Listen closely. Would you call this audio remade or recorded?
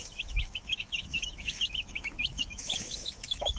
remade